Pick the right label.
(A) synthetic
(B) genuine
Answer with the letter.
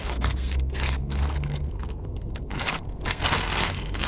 A